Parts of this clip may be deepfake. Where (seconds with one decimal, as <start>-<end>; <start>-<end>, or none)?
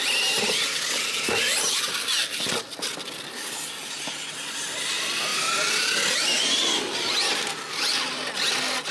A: none